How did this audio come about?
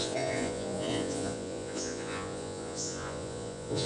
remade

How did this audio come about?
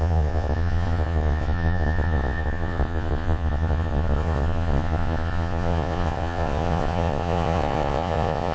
remade